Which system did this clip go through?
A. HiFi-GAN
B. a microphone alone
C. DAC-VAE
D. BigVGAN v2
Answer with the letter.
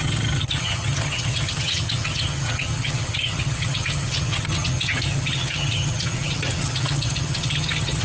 A